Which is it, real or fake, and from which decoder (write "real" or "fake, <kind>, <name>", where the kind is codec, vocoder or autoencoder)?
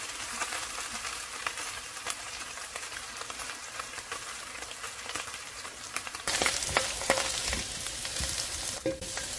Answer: fake, vocoder, BigVGAN v2